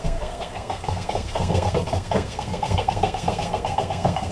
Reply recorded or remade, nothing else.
remade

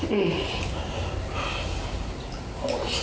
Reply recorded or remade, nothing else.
recorded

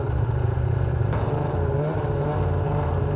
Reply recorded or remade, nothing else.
remade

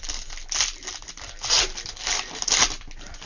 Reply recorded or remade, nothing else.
recorded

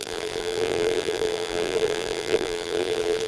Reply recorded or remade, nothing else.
remade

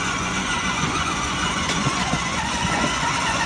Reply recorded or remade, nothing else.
remade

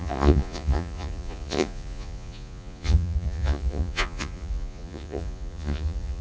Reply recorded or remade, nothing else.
remade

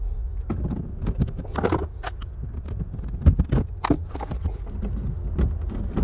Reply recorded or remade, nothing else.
recorded